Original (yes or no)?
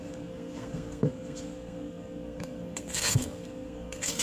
no